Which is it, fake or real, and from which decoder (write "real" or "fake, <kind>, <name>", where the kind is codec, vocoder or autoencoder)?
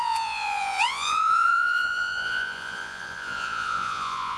fake, vocoder, Vocos